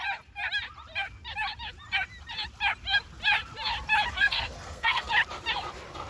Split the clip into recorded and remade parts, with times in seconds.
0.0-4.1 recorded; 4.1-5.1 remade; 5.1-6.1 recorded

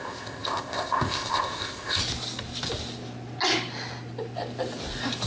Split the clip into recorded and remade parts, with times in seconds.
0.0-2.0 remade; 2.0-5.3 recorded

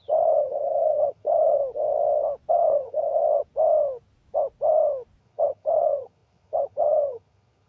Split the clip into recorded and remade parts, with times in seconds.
0.0-1.6 remade; 1.6-2.5 recorded; 2.5-3.2 remade; 3.2-5.2 recorded; 5.2-7.7 remade

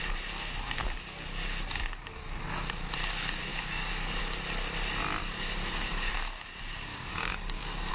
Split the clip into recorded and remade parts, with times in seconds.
0.0-0.8 recorded; 0.8-2.4 remade; 2.4-3.5 recorded; 3.5-4.2 remade; 4.2-5.2 recorded; 5.2-6.1 remade; 6.1-6.9 recorded; 6.9-7.9 remade